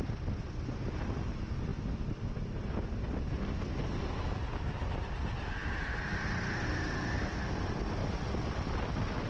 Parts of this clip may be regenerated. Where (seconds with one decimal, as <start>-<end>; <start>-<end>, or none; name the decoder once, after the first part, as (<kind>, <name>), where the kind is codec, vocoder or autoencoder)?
none

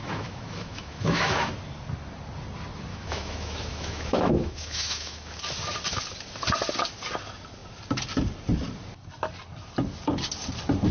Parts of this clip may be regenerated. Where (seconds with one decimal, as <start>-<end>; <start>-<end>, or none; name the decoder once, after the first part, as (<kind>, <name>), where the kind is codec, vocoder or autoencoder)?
0.0-1.5 (autoencoder, DAC-VAE); 2.9-5.4

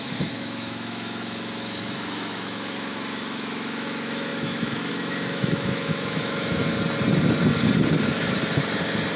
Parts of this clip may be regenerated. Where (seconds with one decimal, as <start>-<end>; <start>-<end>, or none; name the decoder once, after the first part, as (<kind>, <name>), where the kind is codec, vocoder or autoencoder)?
0.0-6.6 (autoencoder, DAC-VAE)

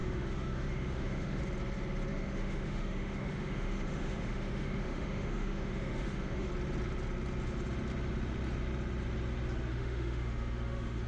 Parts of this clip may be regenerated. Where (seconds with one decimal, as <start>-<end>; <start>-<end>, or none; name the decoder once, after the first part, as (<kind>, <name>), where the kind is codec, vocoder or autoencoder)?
0.0-1.4 (autoencoder, DAC-VAE); 2.1-6.5; 9.7-11.1

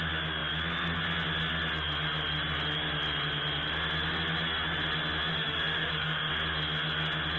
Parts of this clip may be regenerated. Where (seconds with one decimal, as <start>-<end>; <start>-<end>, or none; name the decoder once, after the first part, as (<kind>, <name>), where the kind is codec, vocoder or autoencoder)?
5.3-6.3 (autoencoder, DAC-VAE)

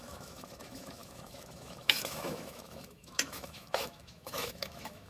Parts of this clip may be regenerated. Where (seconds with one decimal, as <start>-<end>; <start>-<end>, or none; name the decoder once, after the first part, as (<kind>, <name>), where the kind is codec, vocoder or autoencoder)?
0.0-5.1 (autoencoder, DAC-VAE)

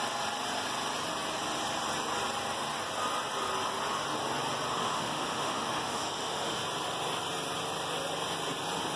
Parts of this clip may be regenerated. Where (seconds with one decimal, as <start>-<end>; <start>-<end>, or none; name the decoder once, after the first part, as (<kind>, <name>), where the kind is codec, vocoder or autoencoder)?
4.8-6.6 (autoencoder, DAC-VAE)